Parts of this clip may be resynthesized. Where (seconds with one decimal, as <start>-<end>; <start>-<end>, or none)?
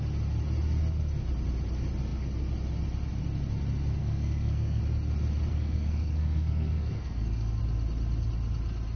4.0-4.8; 5.5-7.6